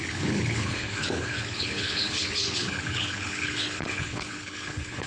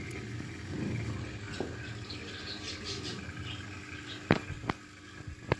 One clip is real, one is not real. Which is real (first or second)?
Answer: second